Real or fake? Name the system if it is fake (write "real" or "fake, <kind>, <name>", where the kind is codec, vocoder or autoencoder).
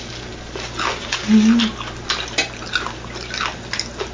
real